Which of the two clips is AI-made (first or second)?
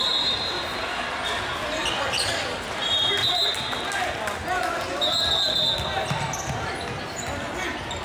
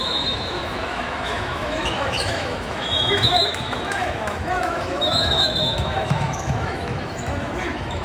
second